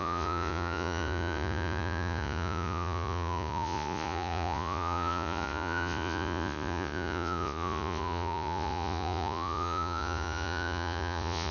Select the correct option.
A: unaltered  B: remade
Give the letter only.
B